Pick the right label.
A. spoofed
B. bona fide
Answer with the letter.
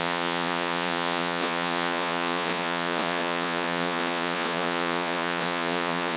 A